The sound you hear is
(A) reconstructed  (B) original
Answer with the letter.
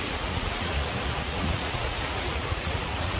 A